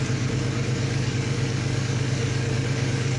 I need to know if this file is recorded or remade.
remade